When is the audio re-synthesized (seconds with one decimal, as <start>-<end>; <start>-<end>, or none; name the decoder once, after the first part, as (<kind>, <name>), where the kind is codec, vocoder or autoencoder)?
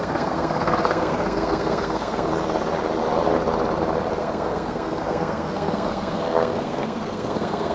0.0-2.3 (codec, SNAC); 4.2-7.7